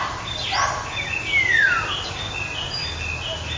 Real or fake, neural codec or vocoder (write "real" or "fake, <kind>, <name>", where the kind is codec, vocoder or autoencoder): real